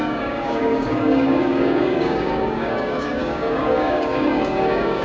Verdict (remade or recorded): remade